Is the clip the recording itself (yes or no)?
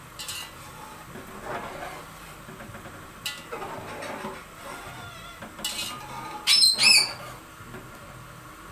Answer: yes